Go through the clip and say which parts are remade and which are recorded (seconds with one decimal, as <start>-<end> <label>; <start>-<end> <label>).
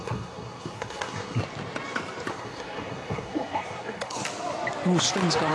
0.0-1.4 remade; 1.4-2.3 recorded; 2.3-4.2 remade; 4.2-5.5 recorded